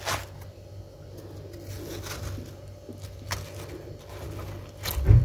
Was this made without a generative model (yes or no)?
yes